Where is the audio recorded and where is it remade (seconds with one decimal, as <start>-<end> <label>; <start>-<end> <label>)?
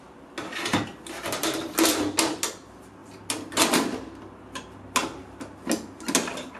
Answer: 0.0-6.6 recorded